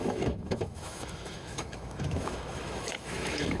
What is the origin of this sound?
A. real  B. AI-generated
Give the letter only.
B